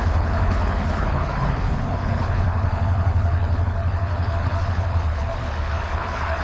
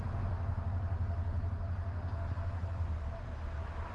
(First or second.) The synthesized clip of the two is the first